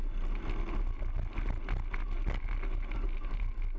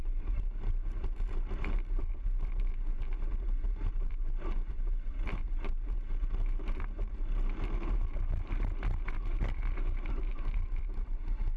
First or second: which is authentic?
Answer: first